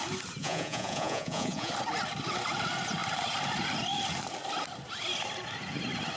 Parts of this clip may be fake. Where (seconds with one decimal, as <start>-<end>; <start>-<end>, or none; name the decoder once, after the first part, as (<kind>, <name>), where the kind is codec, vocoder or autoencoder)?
0.4-1.7 (vocoder, Vocos)